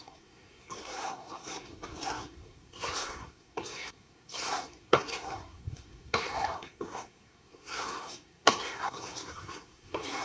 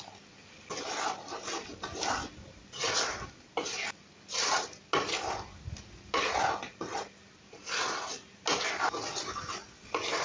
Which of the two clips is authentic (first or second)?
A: second